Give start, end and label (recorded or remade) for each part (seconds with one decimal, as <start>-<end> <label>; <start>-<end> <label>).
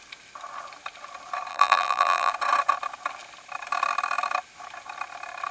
0.0-1.5 recorded; 1.5-2.3 remade; 2.3-5.5 recorded